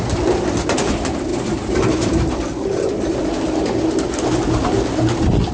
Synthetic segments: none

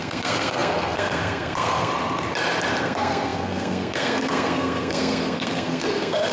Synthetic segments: 0.0-1.9 (codec, SNAC); 2.8-6.3

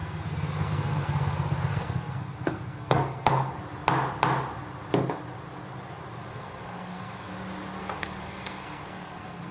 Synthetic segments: 0.0-3.5 (codec, SNAC); 6.3-7.3; 7.8-9.5